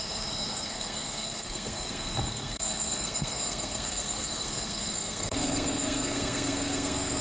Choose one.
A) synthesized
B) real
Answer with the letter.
A